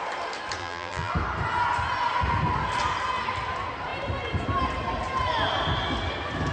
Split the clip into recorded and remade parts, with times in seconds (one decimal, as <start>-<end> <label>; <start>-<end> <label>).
0.0-0.6 recorded; 0.6-1.1 remade; 1.1-6.5 recorded